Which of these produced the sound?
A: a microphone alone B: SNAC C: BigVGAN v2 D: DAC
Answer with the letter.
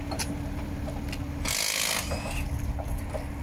A